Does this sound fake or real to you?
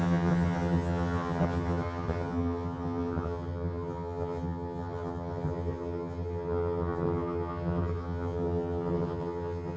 fake